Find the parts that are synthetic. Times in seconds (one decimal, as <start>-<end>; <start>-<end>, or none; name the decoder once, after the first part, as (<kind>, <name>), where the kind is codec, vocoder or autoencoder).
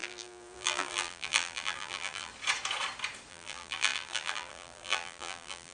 0.0-2.3 (vocoder, BigVGAN v2); 3.3-5.7